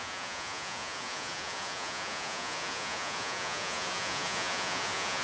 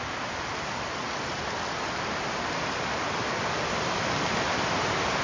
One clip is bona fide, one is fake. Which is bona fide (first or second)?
second